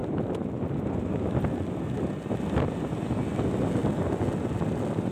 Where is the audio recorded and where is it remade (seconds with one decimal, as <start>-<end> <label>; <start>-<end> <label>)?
0.0-5.1 recorded